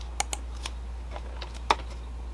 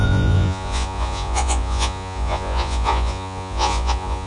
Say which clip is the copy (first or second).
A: second